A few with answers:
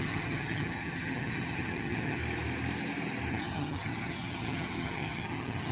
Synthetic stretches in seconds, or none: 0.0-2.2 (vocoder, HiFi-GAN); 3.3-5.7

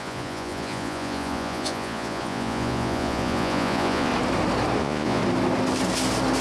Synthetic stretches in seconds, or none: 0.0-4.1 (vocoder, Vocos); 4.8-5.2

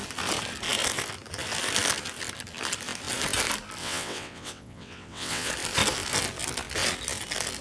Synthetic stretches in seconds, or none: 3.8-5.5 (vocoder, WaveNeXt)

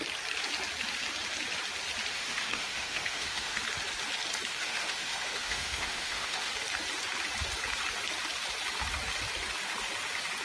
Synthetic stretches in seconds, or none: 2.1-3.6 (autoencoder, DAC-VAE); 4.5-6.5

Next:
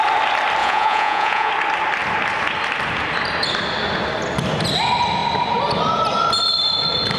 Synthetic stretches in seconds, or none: 0.6-1.5 (vocoder, Vocos)